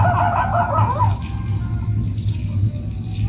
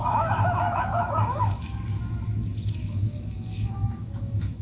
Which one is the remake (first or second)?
second